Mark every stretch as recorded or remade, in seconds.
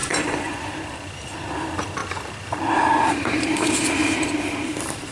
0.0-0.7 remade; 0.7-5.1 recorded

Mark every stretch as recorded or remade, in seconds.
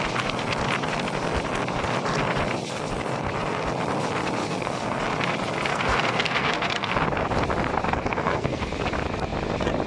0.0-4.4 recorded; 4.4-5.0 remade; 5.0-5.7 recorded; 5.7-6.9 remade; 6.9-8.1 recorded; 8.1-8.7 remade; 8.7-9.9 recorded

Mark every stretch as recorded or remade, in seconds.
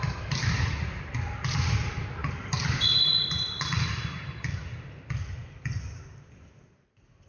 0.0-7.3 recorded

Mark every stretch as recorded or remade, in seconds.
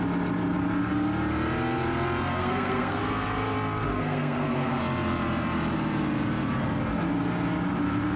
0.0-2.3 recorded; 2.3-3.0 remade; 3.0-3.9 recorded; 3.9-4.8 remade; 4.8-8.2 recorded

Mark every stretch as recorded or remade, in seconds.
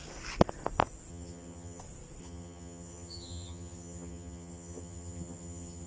0.0-1.1 recorded; 1.1-1.8 remade; 1.8-2.2 recorded; 2.2-5.9 remade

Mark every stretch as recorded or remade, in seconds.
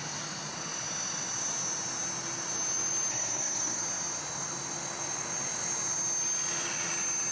0.0-3.1 recorded; 3.1-3.8 remade; 3.8-7.3 recorded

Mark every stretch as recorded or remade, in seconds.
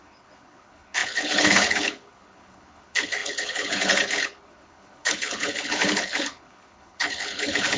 0.0-7.8 remade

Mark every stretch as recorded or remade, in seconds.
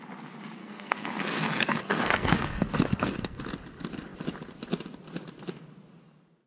0.0-0.6 recorded; 0.6-3.4 remade; 3.4-6.5 recorded